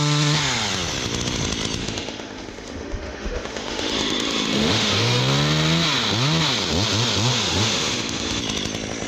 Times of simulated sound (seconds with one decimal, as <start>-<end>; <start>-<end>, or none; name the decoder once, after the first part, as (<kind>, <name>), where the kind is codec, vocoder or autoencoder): 1.8-5.2 (autoencoder, DAC-VAE); 7.3-8.4